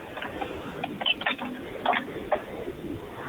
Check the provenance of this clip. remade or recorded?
recorded